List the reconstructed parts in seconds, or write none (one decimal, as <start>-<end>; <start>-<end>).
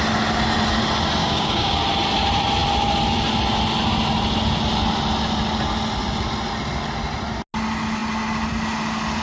1.2-1.8